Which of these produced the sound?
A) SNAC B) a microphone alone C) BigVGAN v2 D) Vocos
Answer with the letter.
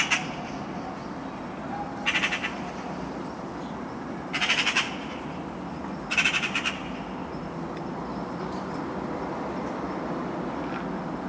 B